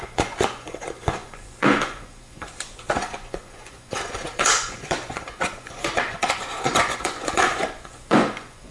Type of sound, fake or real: fake